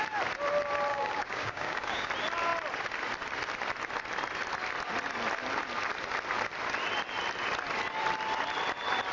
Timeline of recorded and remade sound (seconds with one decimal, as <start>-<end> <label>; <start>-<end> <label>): 0.0-0.9 recorded; 0.9-2.1 remade; 2.1-9.1 recorded